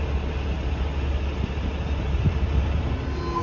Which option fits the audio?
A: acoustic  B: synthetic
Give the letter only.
A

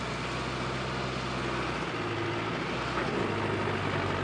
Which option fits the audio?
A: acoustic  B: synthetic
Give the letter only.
A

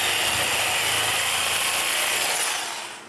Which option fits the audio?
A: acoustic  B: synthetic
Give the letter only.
A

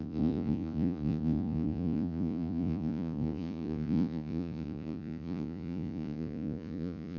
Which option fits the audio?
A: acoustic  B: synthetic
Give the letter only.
B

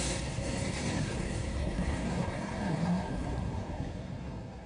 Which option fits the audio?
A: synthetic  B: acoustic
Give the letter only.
A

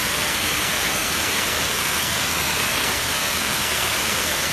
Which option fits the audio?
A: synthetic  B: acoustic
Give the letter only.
A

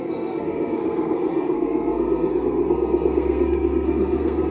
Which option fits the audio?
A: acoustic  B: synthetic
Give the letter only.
B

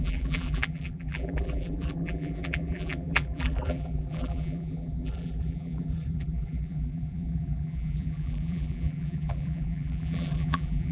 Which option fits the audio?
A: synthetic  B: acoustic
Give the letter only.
A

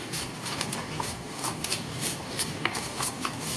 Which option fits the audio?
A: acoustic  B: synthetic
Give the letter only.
B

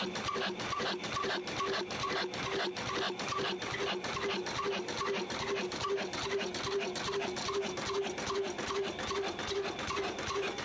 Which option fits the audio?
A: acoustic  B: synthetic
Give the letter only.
A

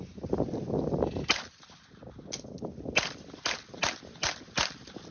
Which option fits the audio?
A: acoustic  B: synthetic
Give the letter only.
A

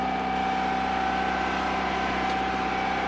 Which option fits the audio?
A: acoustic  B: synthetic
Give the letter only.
A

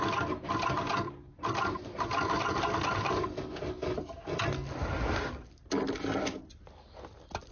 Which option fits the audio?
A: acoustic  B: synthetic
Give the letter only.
A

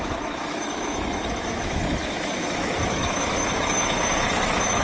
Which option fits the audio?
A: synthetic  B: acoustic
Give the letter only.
A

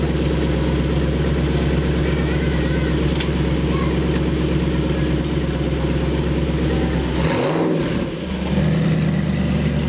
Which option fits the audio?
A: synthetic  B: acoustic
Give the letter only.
B